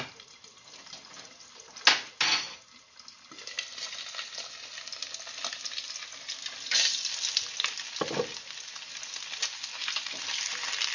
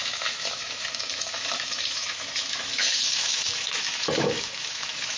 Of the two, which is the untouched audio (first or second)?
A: first